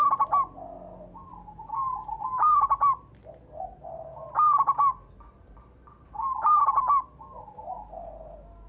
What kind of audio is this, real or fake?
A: real